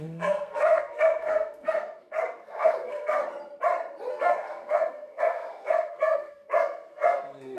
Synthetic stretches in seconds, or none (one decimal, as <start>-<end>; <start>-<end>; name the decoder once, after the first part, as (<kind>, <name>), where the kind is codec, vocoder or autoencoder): 0.0-3.2 (codec, SNAC); 4.1-7.6